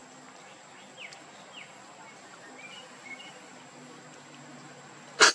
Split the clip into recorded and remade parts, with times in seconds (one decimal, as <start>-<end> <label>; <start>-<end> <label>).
0.0-5.3 recorded